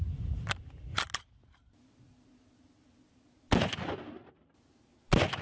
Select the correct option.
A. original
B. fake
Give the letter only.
A